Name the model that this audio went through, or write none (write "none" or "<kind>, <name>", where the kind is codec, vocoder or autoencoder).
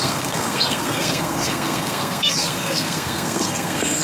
codec, SNAC